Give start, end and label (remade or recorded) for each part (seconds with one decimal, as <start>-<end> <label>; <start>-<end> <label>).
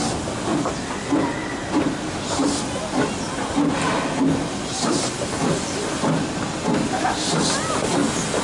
0.0-8.4 recorded